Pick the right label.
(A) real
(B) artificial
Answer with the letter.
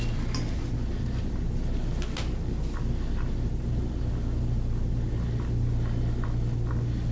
A